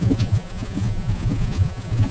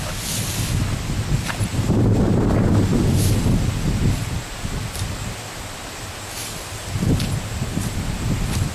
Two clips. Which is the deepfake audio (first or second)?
first